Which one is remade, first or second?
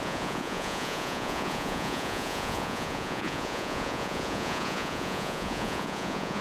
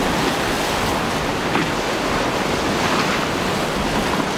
first